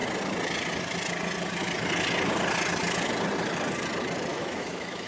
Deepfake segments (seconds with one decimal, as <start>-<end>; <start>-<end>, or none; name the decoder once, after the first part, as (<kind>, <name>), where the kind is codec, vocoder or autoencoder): 4.3-5.1 (autoencoder, DAC-VAE)